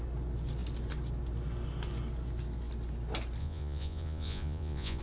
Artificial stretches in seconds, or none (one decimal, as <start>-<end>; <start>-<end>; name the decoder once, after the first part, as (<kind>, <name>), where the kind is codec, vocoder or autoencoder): 3.4-5.0 (vocoder, Vocos)